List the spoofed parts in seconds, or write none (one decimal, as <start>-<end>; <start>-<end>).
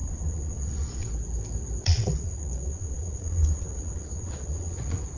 0.0-1.1; 1.8-5.2